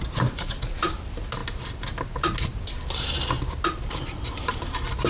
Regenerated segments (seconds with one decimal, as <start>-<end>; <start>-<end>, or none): none